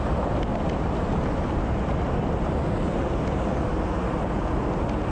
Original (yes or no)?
yes